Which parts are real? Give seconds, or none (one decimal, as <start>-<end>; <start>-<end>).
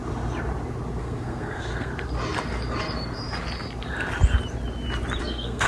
0.0-1.0; 1.9-5.2